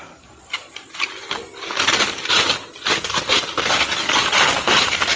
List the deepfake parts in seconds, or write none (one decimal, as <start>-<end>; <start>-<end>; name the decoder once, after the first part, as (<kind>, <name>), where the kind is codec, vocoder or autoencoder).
none